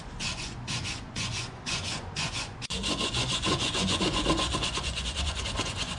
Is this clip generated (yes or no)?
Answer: yes